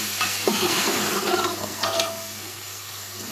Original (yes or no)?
no